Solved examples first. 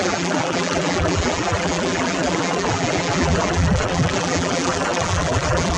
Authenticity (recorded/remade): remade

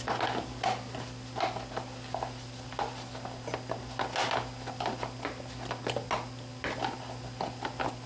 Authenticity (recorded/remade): recorded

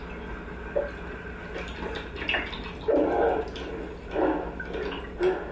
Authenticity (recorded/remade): recorded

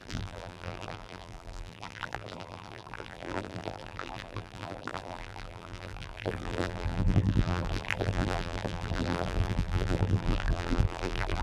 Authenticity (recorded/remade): remade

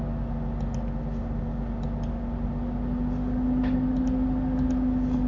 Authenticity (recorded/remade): recorded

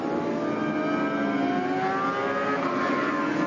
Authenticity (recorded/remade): recorded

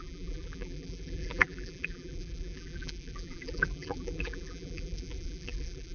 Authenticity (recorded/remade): remade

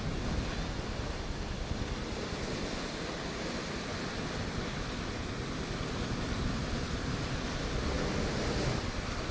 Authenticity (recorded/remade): recorded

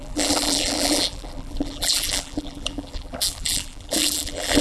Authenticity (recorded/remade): remade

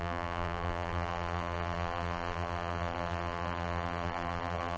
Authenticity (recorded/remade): remade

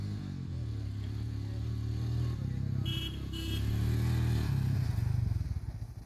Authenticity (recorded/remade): recorded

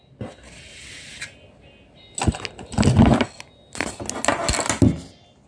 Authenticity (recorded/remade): recorded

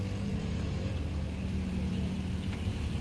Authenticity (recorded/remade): remade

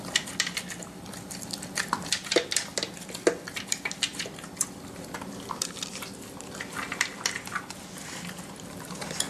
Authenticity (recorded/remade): recorded